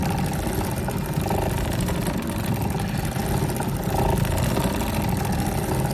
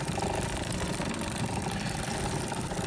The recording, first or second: first